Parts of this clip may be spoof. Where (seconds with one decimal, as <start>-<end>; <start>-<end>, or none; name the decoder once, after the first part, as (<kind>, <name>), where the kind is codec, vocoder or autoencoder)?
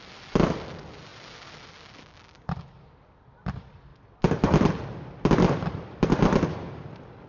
none